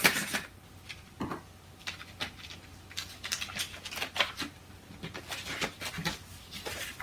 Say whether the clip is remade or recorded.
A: recorded